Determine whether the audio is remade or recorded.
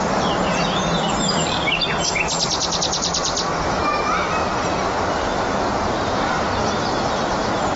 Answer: recorded